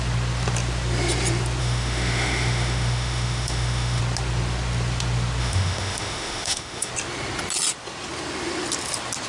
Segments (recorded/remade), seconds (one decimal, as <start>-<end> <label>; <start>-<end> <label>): 0.0-1.6 recorded; 1.6-4.0 remade; 4.0-5.4 recorded; 5.4-6.9 remade; 6.9-9.3 recorded